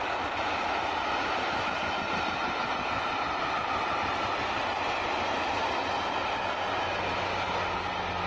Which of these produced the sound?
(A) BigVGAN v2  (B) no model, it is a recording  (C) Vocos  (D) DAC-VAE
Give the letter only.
B